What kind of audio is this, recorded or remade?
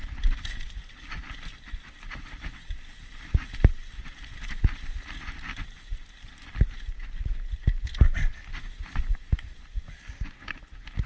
recorded